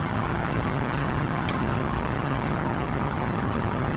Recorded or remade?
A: remade